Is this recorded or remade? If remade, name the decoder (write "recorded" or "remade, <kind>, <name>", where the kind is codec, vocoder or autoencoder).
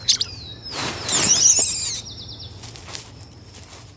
recorded